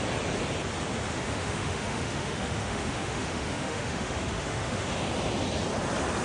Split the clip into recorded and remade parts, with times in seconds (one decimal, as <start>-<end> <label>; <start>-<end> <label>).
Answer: 0.0-1.1 recorded; 1.1-4.8 remade; 4.8-6.2 recorded